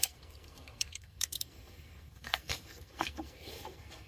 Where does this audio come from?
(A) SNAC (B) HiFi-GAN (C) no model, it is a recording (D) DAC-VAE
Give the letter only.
A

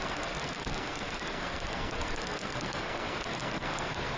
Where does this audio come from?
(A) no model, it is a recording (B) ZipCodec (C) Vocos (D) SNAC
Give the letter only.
D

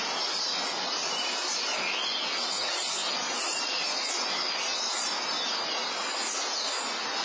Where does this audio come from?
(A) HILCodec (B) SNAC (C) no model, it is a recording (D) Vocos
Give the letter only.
C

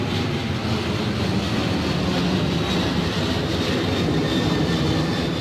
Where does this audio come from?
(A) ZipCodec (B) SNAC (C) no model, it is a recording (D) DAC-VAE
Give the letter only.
C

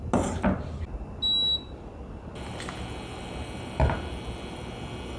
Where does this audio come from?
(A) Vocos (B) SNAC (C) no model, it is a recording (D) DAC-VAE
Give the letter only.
C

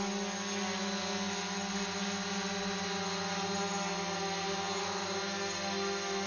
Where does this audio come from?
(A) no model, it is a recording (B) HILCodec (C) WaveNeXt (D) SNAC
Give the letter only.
A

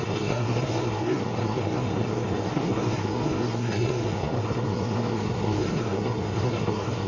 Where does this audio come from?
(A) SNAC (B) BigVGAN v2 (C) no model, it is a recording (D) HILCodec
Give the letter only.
A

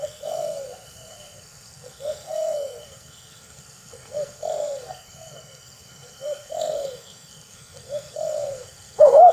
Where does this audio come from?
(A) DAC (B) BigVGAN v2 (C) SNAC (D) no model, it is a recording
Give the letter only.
C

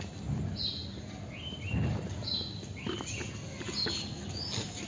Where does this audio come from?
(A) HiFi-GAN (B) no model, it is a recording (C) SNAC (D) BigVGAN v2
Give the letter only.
B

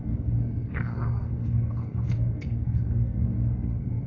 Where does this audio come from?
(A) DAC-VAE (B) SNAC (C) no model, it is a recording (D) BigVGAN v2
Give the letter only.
B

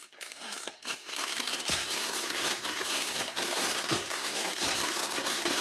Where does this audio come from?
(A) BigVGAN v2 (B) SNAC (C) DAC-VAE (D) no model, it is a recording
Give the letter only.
B